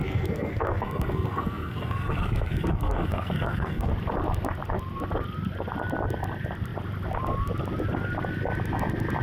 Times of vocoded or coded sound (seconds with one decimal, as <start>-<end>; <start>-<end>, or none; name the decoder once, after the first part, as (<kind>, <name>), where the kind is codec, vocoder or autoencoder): 0.0-3.9 (codec, SNAC)